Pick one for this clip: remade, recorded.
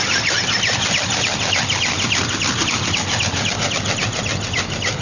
recorded